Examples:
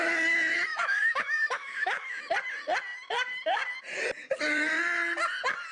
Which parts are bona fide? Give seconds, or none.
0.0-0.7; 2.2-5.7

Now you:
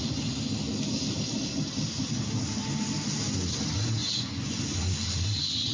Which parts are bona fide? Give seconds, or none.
0.0-4.0; 4.6-5.7